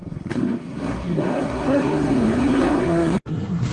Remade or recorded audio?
remade